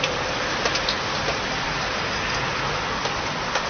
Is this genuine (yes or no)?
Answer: yes